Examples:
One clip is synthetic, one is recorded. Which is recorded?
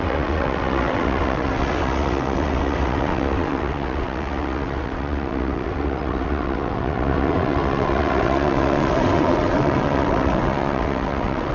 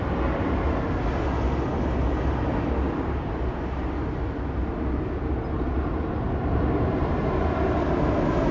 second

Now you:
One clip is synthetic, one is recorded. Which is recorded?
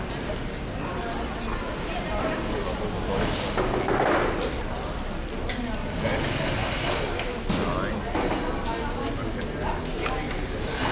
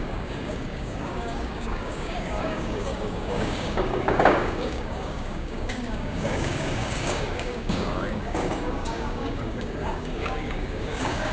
first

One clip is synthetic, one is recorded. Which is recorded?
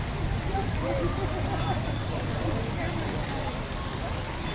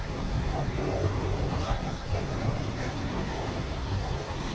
first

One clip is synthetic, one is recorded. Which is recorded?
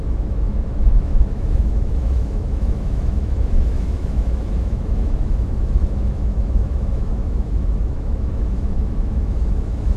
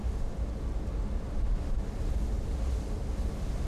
second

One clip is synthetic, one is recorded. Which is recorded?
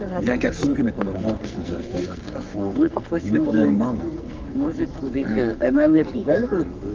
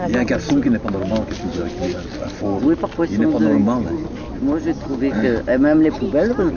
second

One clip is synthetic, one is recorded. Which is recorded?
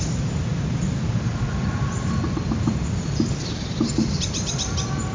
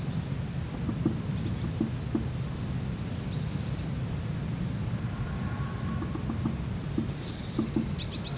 second